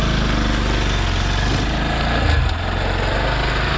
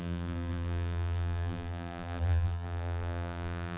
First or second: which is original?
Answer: first